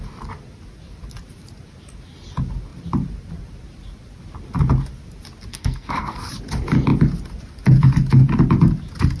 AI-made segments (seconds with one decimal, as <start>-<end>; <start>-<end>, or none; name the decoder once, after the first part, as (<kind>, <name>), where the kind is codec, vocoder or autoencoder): 5.5-6.3 (codec, SNAC)